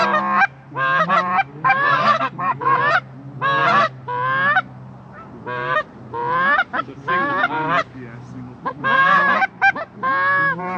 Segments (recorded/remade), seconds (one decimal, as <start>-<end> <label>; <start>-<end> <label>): 0.0-1.5 recorded; 1.5-2.8 remade; 2.8-10.8 recorded